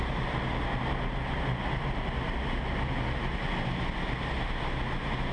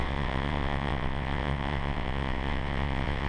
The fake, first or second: second